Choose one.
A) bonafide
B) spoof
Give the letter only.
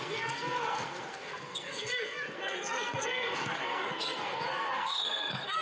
B